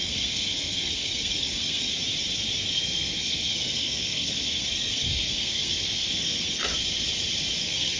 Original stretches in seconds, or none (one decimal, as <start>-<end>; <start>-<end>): 1.9-2.7; 6.7-7.6